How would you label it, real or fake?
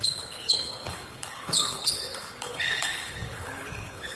fake